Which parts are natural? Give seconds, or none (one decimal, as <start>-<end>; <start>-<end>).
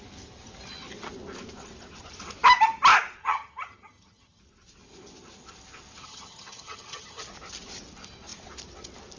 0.0-3.2; 4.4-6.0; 7.2-9.2